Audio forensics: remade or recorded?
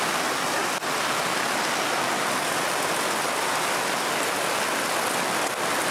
recorded